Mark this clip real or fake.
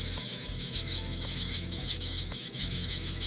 fake